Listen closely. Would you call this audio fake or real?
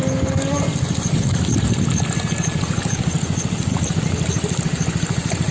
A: real